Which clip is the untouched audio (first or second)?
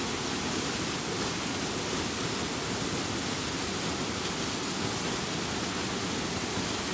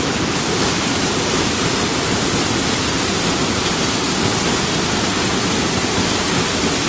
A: first